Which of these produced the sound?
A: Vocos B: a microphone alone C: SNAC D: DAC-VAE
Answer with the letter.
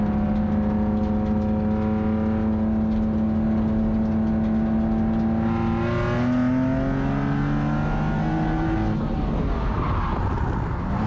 B